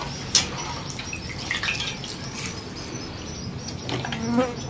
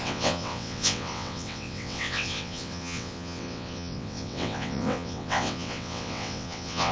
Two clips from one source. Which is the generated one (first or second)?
second